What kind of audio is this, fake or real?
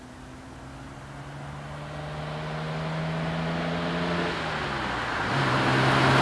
real